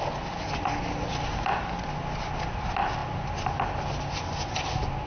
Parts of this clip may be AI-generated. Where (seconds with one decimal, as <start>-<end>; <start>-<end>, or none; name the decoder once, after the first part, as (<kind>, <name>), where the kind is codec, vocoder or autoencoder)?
none

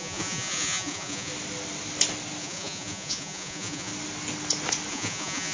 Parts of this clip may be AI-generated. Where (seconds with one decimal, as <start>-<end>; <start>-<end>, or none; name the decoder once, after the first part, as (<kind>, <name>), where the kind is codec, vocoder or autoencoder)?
0.0-1.3 (vocoder, Vocos); 2.4-3.9; 4.9-5.5

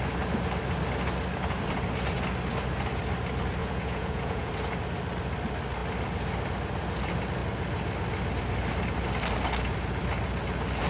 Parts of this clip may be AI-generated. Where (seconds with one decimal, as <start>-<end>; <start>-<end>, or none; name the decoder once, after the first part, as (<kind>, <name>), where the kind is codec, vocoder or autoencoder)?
3.6-4.5 (vocoder, Vocos)

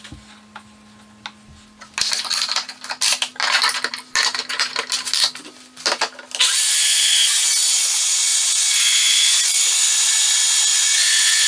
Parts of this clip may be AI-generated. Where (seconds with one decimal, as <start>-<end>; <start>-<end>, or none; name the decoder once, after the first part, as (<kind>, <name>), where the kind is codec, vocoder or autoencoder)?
6.8-7.5 (vocoder, Vocos); 8.3-9.6; 10.7-11.5

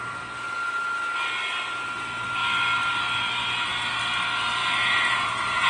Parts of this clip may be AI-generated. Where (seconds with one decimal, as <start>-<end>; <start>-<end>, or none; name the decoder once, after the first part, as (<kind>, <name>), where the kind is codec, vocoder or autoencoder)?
4.6-5.7 (vocoder, Vocos)